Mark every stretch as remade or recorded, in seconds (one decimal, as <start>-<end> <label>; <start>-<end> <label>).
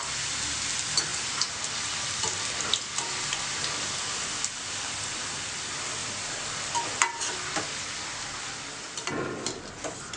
0.0-10.2 recorded